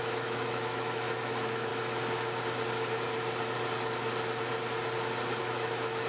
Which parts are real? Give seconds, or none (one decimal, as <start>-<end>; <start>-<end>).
1.7-5.4